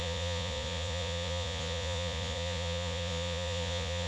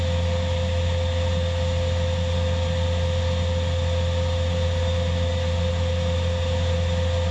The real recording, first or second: second